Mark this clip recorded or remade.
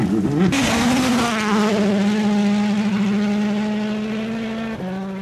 recorded